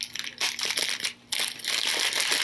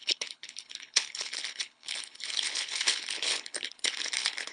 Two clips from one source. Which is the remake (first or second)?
second